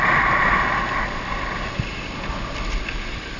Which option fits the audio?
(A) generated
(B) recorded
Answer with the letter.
B